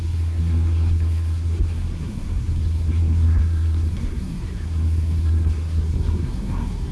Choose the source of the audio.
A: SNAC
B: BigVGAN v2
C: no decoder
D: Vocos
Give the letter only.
A